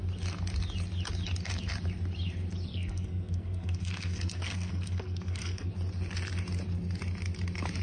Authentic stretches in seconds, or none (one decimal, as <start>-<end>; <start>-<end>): 0.0-2.7; 5.7-7.8